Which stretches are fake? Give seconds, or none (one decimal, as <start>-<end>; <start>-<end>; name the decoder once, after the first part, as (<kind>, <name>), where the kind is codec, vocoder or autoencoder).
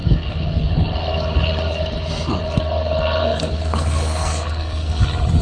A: 0.0-0.7 (codec, SNAC); 3.2-5.0